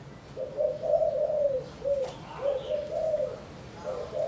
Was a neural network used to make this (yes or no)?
no